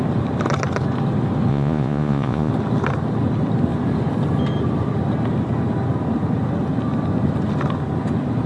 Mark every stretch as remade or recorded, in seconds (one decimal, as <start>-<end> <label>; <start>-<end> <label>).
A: 0.0-1.5 recorded; 1.5-2.5 remade; 2.5-8.5 recorded